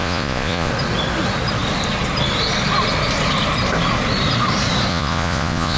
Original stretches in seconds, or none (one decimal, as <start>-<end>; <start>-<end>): 0.7-4.9